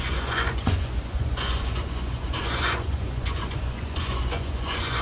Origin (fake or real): fake